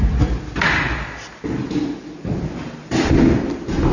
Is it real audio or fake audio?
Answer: real